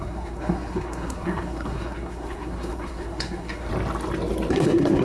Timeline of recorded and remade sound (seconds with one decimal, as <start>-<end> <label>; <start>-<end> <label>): 0.0-3.7 remade; 3.7-4.5 recorded; 4.5-5.0 remade